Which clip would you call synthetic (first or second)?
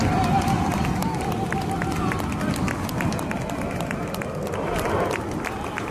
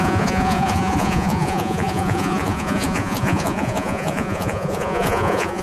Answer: second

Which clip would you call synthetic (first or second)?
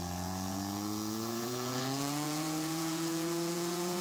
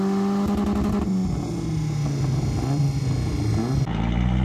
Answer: first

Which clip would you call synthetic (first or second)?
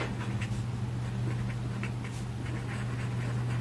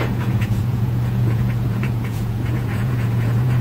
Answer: second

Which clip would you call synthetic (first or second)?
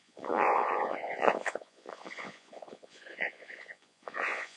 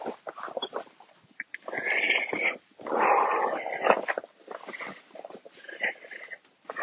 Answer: first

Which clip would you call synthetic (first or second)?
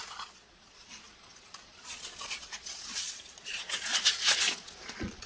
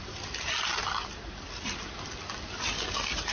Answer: first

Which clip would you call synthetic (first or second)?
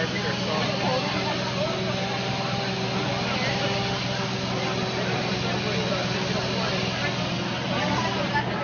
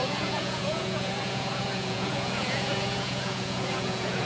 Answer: second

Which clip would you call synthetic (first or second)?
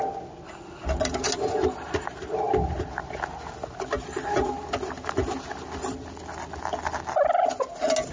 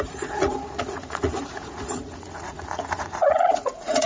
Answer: second